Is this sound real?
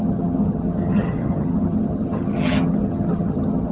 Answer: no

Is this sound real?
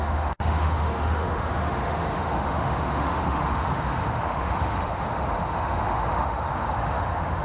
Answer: no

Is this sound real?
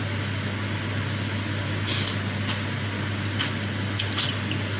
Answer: no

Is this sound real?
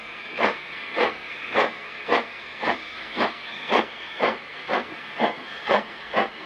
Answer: no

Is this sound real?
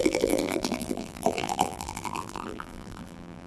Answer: no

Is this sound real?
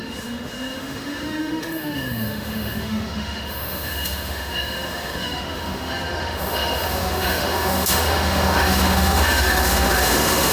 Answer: no